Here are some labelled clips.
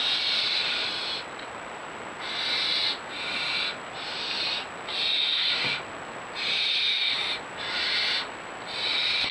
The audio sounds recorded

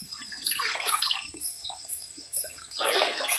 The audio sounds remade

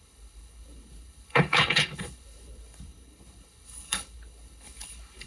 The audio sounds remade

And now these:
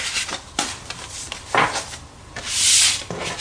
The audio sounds recorded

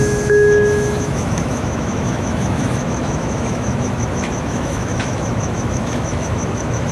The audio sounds remade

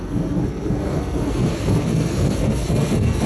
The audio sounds remade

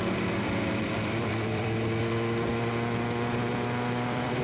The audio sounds remade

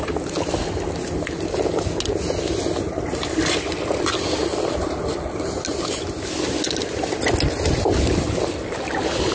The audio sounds recorded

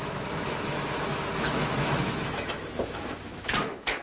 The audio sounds remade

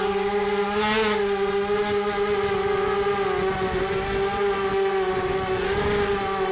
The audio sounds recorded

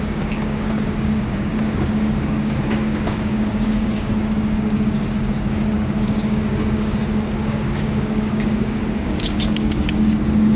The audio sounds remade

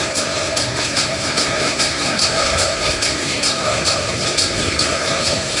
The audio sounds remade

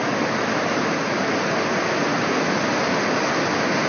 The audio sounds recorded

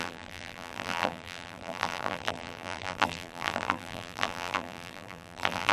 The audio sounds remade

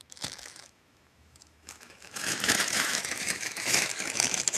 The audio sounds remade